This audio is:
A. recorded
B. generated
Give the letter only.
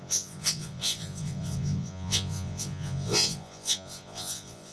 B